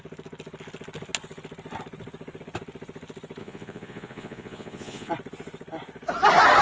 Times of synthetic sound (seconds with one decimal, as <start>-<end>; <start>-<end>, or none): 3.4-5.1